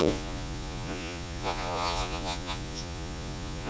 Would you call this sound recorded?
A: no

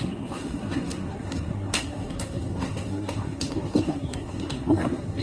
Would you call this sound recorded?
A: no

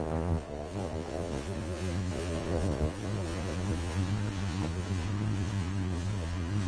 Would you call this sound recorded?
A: no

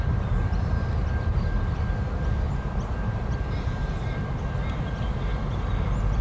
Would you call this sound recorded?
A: yes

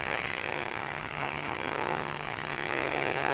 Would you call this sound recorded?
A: no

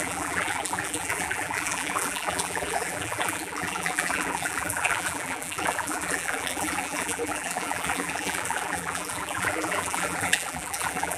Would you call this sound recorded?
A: no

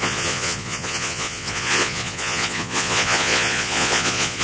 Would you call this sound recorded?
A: no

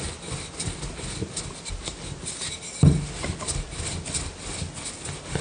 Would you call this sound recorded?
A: yes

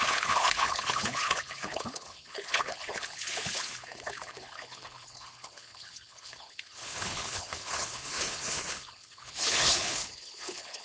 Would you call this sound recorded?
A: no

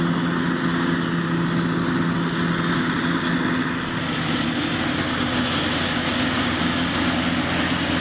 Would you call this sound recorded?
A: yes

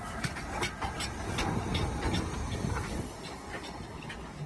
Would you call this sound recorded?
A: yes